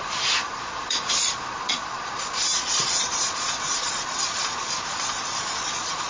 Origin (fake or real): fake